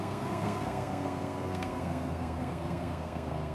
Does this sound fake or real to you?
fake